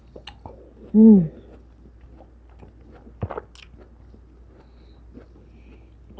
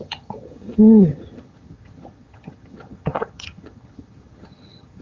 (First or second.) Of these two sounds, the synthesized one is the second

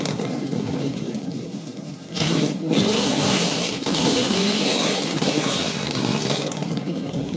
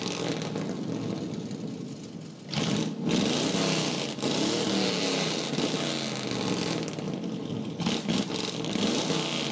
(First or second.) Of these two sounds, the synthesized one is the first